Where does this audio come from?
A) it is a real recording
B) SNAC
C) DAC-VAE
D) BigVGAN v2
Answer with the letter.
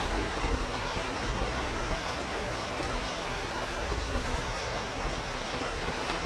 B